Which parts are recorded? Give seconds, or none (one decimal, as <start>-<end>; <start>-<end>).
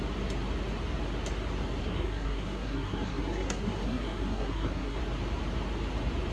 0.0-1.8; 5.0-6.3